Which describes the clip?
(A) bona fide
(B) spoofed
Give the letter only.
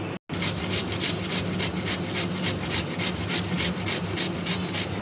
A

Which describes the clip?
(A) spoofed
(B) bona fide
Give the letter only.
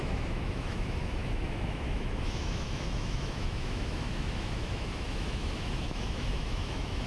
A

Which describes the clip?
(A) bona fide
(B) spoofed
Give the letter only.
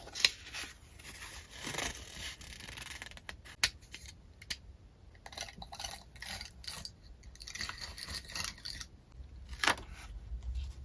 A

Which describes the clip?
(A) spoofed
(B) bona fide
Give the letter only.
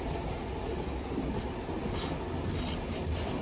B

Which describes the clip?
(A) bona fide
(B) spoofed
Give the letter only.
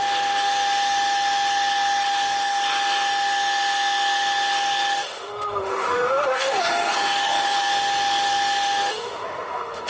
B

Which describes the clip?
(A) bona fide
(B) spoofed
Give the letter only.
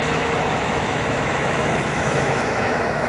B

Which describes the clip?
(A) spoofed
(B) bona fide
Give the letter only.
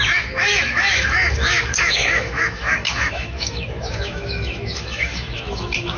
A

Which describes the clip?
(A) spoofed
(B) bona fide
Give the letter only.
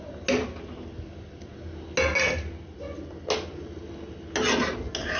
B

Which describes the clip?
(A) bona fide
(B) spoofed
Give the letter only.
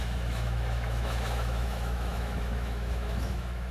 B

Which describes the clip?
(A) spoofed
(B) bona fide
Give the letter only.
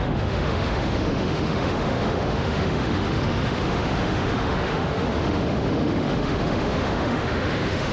A